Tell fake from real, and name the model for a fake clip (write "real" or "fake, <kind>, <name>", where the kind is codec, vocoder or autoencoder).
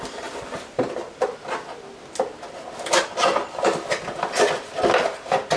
real